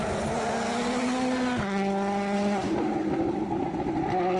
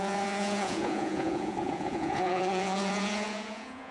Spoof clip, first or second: second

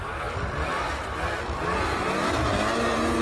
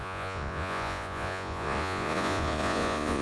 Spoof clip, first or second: second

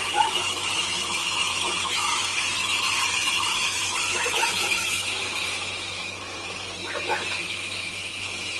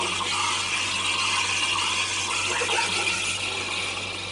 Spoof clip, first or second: first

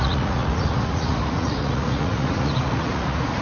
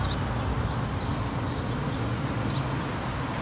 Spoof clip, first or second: first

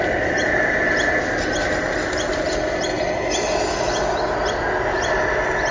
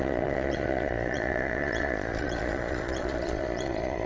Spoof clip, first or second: second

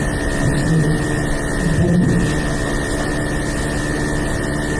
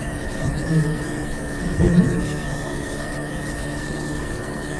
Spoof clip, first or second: second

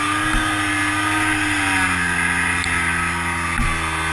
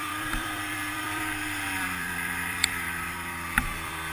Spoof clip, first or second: second